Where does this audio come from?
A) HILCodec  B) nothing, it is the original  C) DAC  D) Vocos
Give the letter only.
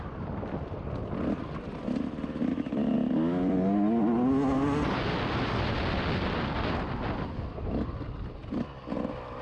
B